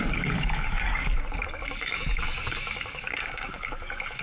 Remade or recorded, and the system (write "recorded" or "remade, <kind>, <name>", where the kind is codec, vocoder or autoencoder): remade, codec, DAC